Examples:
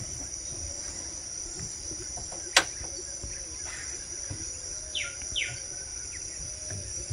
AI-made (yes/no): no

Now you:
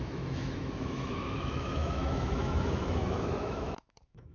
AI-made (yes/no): yes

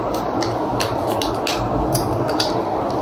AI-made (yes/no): no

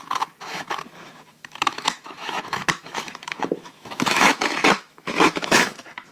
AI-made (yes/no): yes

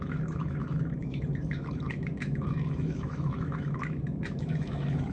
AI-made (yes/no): yes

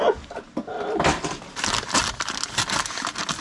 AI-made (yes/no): no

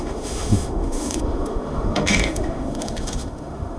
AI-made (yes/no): yes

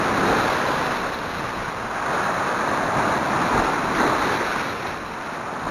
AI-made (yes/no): no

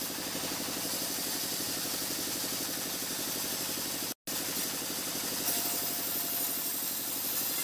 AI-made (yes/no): no